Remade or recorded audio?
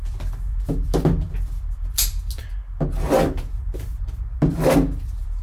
recorded